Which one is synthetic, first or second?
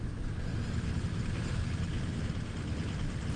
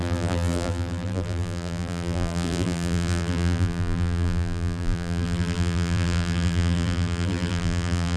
second